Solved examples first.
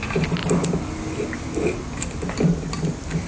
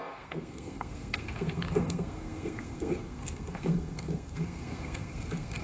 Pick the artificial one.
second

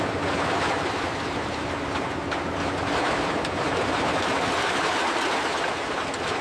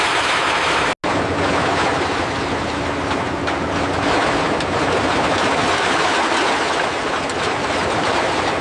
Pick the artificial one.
first